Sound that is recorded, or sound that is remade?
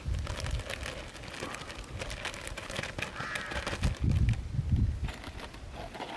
recorded